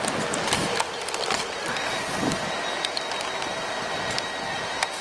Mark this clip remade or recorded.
recorded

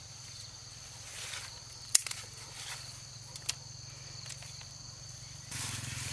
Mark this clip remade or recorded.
recorded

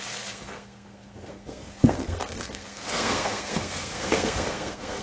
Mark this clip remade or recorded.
remade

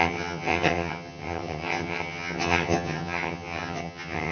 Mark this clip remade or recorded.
remade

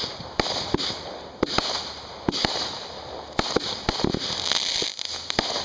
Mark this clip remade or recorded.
recorded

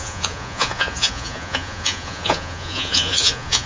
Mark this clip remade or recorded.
remade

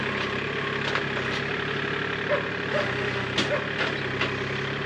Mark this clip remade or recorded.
recorded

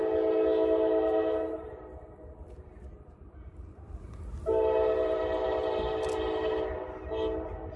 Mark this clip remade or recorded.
recorded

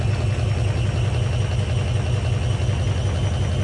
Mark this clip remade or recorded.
recorded